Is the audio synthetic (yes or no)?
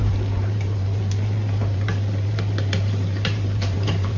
yes